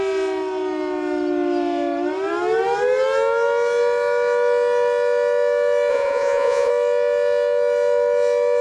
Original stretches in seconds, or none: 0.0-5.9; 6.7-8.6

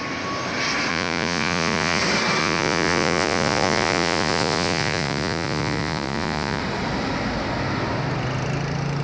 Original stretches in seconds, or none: 0.0-0.9; 2.0-2.4; 6.6-9.0

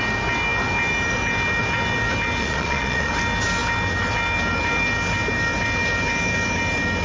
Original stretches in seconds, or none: 0.0-2.4; 3.1-7.0

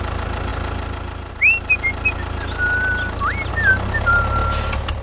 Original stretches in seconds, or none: 0.0-5.0